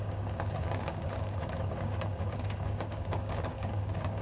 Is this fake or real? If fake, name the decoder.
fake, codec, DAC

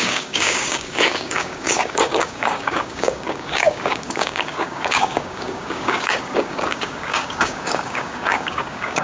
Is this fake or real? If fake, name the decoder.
fake, codec, DAC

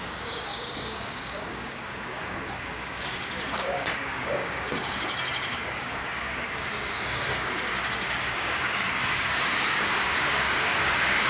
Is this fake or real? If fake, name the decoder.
fake, codec, DAC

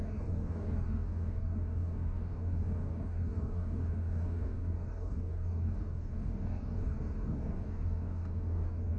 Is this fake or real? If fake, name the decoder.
fake, codec, DAC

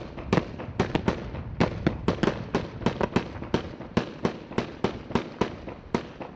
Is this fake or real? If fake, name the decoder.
real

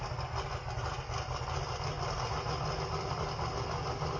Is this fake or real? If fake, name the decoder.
real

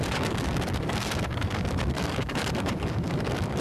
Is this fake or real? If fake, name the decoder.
fake, codec, DAC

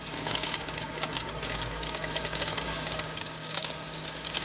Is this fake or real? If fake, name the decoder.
fake, codec, DAC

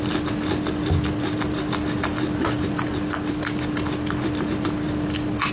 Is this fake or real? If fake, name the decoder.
real